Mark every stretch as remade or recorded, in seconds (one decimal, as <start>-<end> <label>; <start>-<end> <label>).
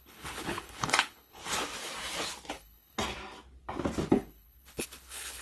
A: 0.0-1.4 remade; 1.4-2.5 recorded; 2.5-3.0 remade; 3.0-4.1 recorded; 4.1-5.4 remade